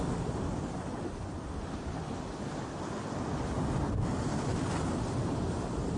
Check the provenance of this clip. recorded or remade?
recorded